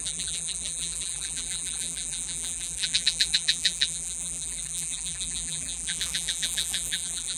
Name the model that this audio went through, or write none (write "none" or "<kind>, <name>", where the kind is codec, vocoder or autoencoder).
vocoder, BigVGAN v2